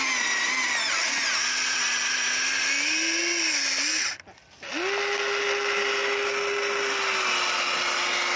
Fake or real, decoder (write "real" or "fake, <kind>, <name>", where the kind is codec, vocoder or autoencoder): real